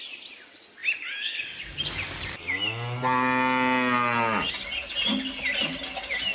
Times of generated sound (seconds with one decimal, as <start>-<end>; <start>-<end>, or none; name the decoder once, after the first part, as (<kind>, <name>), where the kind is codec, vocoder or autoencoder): none